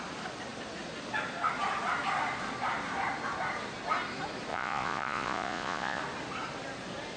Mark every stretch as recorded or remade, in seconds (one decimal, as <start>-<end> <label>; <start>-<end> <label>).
0.0-4.5 recorded; 4.5-6.0 remade; 6.0-7.2 recorded